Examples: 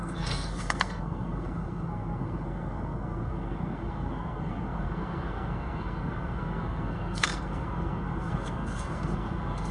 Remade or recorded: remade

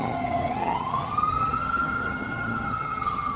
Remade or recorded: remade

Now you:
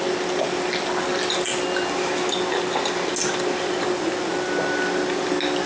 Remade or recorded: recorded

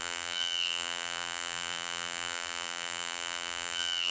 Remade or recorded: remade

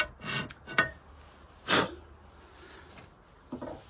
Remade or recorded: recorded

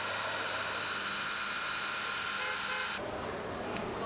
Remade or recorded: recorded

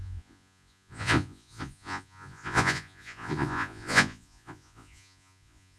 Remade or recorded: remade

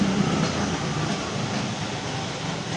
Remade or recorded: recorded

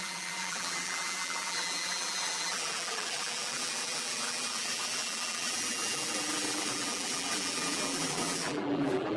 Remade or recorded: remade